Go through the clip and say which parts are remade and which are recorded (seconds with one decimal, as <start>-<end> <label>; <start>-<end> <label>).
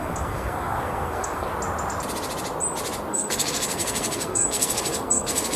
0.0-1.5 remade; 1.5-3.1 recorded; 3.1-5.6 remade